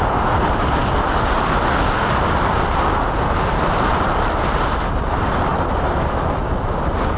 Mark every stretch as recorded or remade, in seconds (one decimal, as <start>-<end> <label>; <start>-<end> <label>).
0.0-7.2 recorded